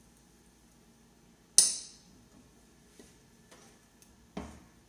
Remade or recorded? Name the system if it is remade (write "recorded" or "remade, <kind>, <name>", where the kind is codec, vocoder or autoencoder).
recorded